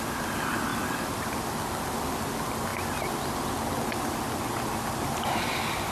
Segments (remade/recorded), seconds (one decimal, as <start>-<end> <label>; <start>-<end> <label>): 0.0-5.9 recorded